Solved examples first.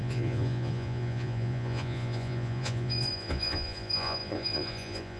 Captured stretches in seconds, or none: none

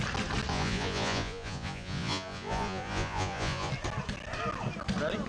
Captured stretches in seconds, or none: 0.0-0.5; 3.7-5.3

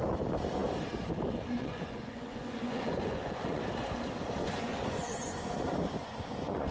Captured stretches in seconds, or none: 0.0-1.6; 3.6-4.4; 5.4-6.0

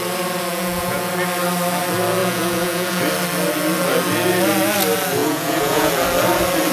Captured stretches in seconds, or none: 0.0-0.5; 1.1-2.2; 3.0-5.2; 5.9-6.7